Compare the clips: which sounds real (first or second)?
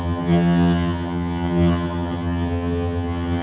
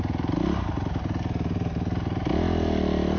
second